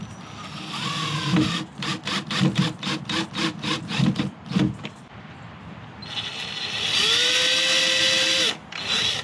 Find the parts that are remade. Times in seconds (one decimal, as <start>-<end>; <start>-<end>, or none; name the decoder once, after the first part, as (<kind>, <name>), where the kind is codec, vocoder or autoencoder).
2.6-6.4 (vocoder, BigVGAN v2)